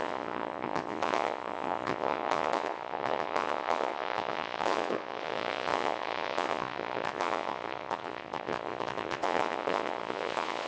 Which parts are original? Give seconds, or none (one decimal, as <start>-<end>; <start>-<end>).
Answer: none